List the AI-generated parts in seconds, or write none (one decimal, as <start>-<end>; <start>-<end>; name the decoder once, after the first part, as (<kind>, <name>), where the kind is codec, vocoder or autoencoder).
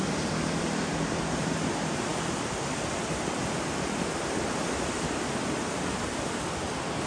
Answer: none